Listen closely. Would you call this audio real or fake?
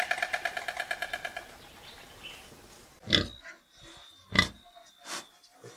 real